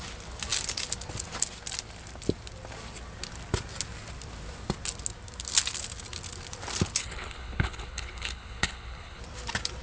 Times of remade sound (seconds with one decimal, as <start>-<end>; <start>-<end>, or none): 7.0-9.2